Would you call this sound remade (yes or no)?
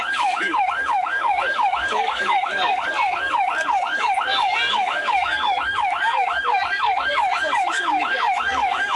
yes